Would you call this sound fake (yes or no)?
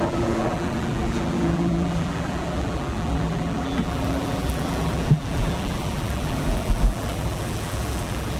yes